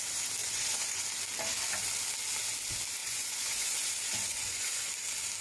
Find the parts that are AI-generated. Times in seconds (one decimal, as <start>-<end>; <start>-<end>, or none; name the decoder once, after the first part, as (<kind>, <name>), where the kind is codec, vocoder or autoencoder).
0.4-1.0 (vocoder, Vocos); 3.0-3.9; 4.3-4.9